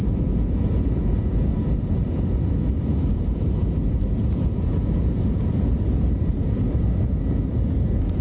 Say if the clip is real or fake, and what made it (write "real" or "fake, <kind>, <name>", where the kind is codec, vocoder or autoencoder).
fake, vocoder, Vocos